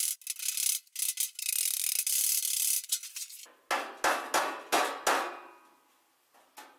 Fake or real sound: real